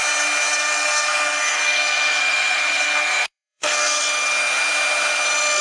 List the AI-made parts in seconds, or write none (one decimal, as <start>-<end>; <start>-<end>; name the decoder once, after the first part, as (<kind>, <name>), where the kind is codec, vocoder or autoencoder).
0.6-4.0 (codec, SNAC)